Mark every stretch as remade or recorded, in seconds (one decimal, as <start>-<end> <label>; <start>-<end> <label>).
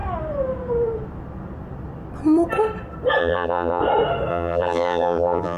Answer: 0.0-3.2 recorded; 3.2-3.8 remade; 3.8-4.3 recorded; 4.3-5.6 remade